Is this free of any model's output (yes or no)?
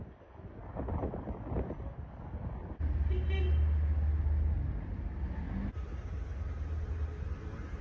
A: yes